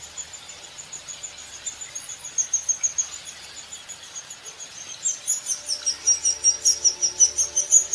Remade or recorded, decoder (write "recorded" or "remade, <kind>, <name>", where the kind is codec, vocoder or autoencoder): recorded